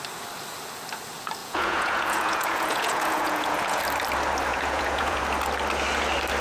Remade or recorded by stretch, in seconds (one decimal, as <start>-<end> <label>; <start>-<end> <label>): 0.0-1.4 recorded; 1.4-3.8 remade; 3.8-4.5 recorded; 4.5-5.2 remade; 5.2-6.4 recorded